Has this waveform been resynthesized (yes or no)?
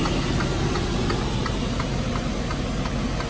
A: no